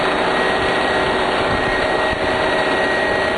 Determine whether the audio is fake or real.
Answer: real